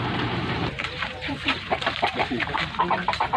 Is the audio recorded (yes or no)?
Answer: no